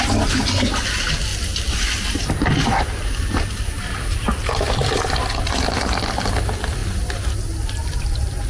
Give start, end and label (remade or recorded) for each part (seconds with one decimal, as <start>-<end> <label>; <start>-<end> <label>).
0.0-8.5 recorded